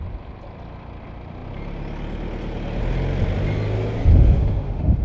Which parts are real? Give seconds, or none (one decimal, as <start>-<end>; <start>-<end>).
0.0-4.1